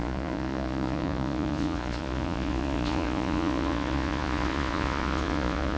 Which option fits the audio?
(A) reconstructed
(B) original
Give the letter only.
A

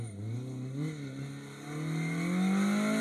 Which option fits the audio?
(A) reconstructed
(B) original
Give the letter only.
B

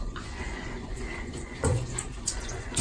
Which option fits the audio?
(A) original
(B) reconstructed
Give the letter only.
B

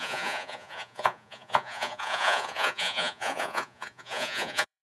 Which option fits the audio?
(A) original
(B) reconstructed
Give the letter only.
B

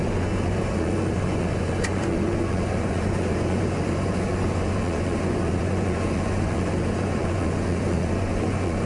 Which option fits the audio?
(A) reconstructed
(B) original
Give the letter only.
A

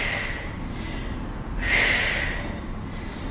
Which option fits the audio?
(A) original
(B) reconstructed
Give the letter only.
A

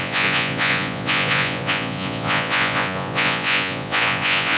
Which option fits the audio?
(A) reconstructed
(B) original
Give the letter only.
A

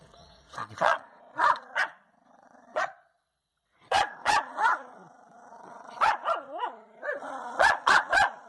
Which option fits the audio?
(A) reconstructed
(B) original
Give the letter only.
A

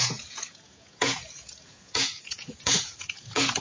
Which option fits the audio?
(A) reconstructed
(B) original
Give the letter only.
A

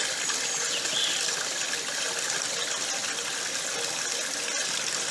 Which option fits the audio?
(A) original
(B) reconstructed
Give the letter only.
A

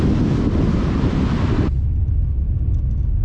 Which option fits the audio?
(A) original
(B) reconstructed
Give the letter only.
A